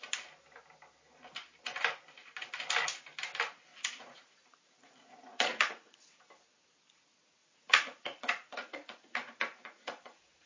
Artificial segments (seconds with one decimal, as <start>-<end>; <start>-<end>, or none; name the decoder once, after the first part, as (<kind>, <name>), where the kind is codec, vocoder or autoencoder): 3.7-6.3 (vocoder, Vocos); 7.4-10.5

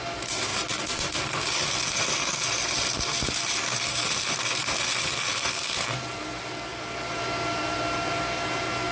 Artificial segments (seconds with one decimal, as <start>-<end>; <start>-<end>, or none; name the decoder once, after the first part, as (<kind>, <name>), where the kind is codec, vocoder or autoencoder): none